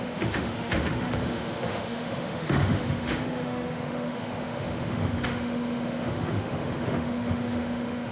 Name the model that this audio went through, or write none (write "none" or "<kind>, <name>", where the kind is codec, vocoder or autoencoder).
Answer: autoencoder, DAC-VAE